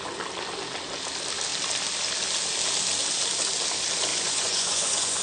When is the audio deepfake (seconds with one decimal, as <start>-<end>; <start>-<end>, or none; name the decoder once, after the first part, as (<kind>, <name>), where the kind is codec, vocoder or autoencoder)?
4.1-5.2 (vocoder, Vocos)